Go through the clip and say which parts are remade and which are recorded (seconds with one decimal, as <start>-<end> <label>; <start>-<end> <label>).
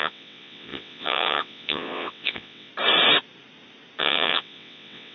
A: 0.0-2.7 remade; 2.7-4.0 recorded; 4.0-5.1 remade